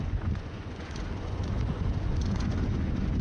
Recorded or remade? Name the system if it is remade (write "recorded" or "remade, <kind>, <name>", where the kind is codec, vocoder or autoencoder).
remade, vocoder, Vocos